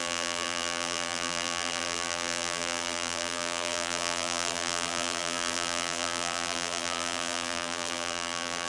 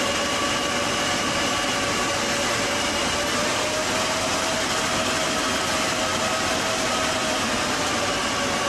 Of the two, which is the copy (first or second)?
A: first